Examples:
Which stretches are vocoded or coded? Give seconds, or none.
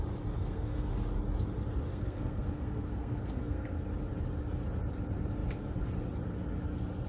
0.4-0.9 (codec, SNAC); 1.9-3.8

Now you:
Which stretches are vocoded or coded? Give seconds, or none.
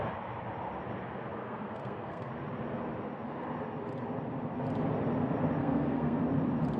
1.4-2.3 (codec, SNAC); 5.6-6.2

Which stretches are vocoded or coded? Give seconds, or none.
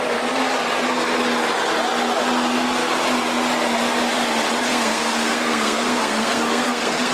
4.7-7.1 (codec, SNAC)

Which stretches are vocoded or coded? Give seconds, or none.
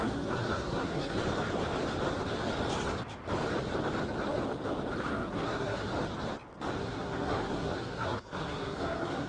0.0-1.2 (codec, SNAC); 5.1-5.9; 6.8-9.3